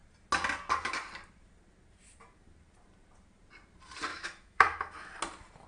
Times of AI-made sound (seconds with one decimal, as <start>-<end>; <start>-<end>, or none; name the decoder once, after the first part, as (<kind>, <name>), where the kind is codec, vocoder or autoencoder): 4.1-5.1 (autoencoder, DAC-VAE)